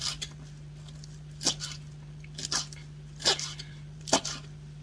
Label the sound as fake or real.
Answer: real